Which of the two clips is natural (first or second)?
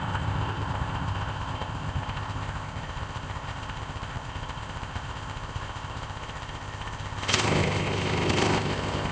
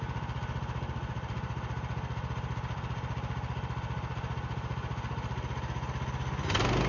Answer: second